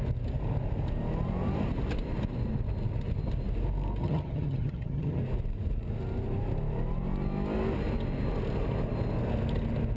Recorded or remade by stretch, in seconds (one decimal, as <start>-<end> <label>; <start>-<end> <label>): 0.0-4.0 recorded; 4.0-5.2 remade; 5.2-10.0 recorded